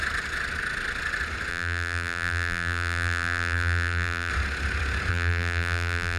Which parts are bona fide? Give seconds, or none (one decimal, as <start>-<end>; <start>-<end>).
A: 0.0-1.5; 4.3-5.1